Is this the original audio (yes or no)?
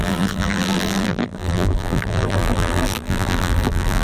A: no